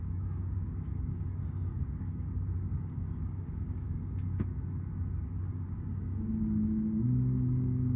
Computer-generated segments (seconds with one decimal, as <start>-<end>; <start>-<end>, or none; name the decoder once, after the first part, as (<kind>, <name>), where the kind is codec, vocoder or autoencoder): 0.0-4.5 (codec, DAC); 5.5-8.0